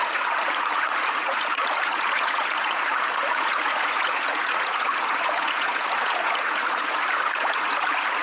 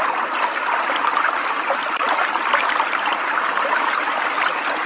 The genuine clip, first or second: second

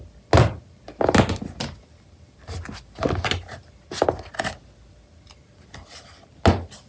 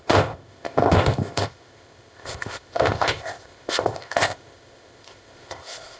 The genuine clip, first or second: first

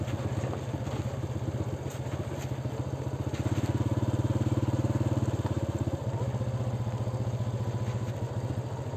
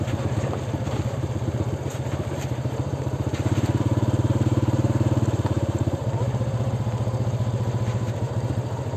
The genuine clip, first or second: first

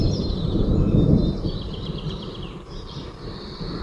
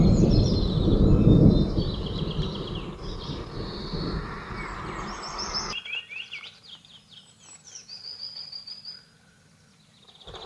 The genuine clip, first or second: second